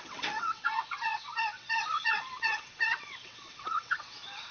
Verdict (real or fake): fake